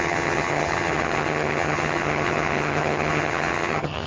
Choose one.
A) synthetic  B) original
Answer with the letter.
A